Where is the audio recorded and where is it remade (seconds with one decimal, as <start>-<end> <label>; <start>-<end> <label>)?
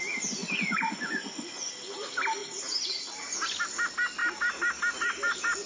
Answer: 0.0-0.4 recorded; 0.4-1.7 remade; 1.7-5.7 recorded